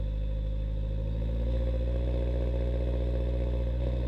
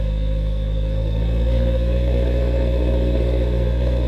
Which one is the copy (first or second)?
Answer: second